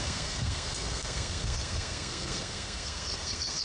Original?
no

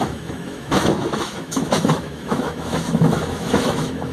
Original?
no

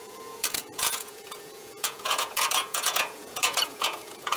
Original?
no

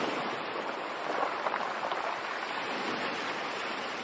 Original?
yes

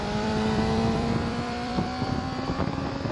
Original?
no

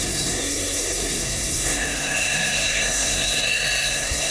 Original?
no